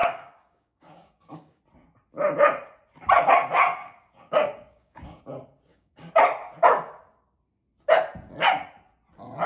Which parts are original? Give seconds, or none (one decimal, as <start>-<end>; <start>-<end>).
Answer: 1.6-3.8; 5.2-5.7; 6.2-9.5